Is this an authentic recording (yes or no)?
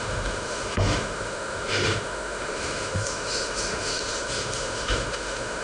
no